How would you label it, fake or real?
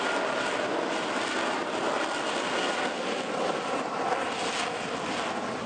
real